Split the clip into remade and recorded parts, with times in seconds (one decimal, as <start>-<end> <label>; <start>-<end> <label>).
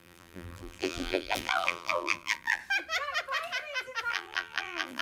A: 0.0-2.6 remade; 2.6-4.1 recorded; 4.1-5.0 remade